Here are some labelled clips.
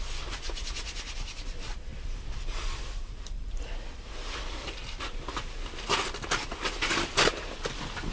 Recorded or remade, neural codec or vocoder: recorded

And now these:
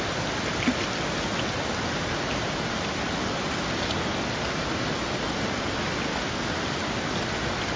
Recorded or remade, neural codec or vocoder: recorded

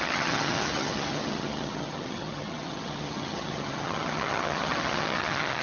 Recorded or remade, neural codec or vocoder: remade, vocoder, HiFi-GAN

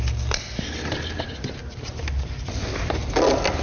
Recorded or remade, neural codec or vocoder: recorded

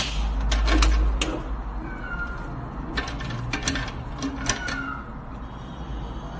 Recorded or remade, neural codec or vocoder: recorded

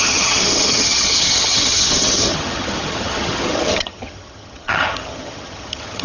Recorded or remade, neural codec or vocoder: remade, vocoder, HiFi-GAN